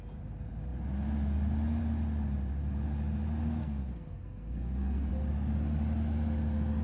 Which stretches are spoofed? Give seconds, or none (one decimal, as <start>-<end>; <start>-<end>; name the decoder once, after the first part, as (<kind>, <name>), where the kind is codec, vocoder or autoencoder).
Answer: 3.6-5.1 (codec, SNAC)